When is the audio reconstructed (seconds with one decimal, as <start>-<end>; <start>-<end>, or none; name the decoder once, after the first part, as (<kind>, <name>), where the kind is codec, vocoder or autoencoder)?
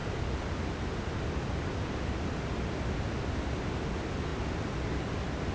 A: none